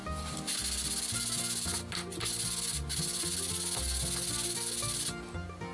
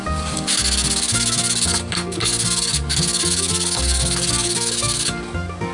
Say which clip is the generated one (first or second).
second